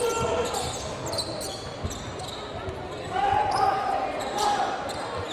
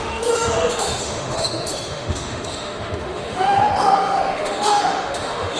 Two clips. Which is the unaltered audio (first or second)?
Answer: first